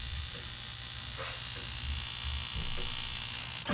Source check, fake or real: real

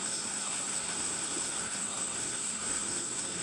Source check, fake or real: fake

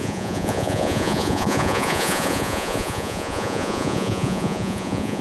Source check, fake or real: fake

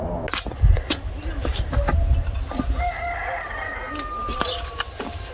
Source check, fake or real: real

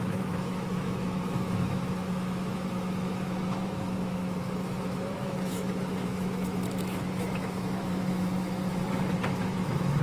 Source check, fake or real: fake